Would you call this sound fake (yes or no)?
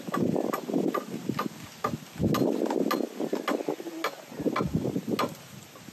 no